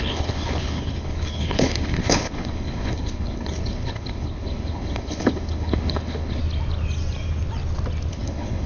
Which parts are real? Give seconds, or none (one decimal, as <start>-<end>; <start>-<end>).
6.4-8.1